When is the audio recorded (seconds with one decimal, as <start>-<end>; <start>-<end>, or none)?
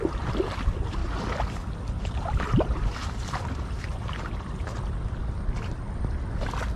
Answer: 0.0-1.0; 5.1-6.8